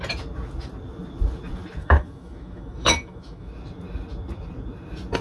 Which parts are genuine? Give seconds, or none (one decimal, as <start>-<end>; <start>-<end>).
0.0-1.8; 3.5-5.2